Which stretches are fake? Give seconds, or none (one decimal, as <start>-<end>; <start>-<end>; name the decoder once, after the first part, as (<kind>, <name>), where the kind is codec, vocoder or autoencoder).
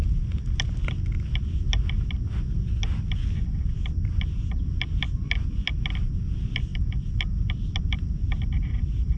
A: none